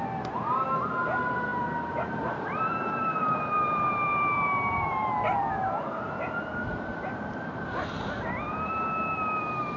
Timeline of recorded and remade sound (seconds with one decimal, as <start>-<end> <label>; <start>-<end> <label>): 0.0-1.5 recorded; 1.5-6.1 remade; 6.1-6.7 recorded; 6.7-7.3 remade; 7.3-9.8 recorded